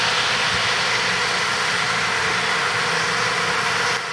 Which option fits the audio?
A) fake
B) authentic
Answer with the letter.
B